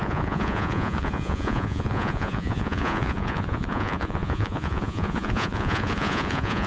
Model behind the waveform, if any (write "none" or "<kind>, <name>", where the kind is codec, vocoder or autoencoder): vocoder, Vocos